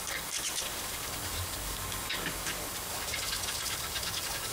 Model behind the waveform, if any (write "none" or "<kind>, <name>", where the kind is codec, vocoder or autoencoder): codec, DAC